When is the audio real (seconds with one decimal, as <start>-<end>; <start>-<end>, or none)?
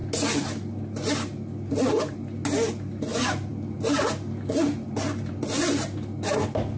0.0-6.8